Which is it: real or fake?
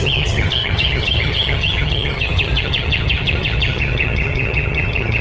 fake